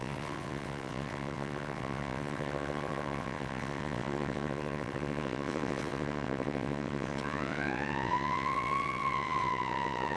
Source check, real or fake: fake